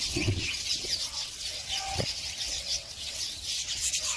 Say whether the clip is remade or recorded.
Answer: remade